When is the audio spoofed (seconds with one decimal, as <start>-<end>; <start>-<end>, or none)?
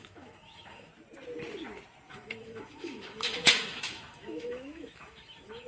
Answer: 0.0-0.9; 2.1-5.7